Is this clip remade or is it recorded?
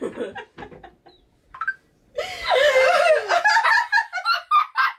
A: recorded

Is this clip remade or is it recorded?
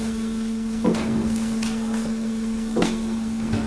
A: remade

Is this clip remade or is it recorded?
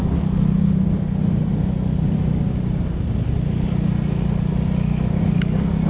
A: recorded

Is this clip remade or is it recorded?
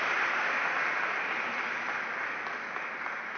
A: recorded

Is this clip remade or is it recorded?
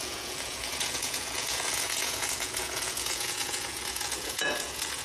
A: remade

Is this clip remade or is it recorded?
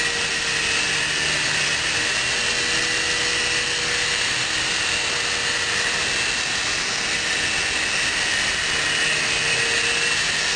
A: recorded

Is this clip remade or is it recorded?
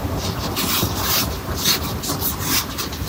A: recorded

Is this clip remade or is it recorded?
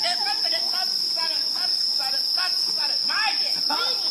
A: recorded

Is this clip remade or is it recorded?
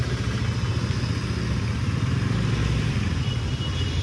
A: recorded